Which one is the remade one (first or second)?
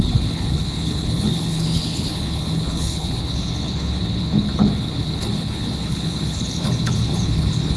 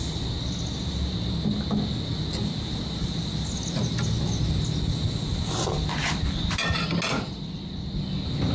first